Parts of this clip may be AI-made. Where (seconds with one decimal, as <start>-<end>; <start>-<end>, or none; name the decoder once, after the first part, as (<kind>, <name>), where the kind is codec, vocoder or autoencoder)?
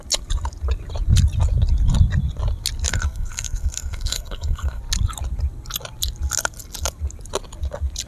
2.9-4.8 (codec, SNAC)